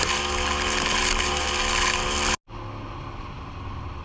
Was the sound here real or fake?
real